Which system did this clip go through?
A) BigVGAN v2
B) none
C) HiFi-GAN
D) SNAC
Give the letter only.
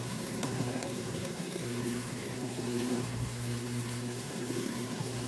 D